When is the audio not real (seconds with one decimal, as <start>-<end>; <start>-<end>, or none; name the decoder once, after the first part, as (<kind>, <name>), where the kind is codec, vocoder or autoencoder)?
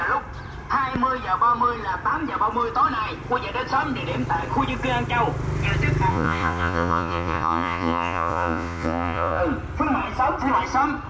6.1-9.4 (vocoder, Vocos)